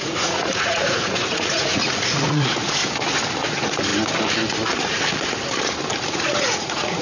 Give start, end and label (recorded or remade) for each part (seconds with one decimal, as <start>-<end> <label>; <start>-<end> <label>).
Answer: 0.0-2.8 remade; 2.8-3.4 recorded; 3.4-3.9 remade; 3.9-6.1 recorded; 6.1-7.0 remade